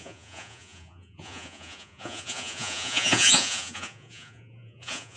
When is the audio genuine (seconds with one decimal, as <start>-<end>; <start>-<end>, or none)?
none